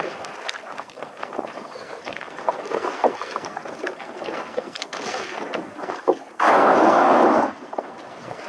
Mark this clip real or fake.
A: fake